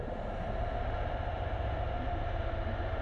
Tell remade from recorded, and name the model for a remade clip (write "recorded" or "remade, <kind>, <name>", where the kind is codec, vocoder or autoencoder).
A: recorded